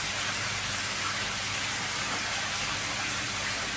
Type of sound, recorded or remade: recorded